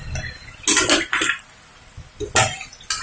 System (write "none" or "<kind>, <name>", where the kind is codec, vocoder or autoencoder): none